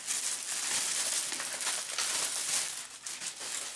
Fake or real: real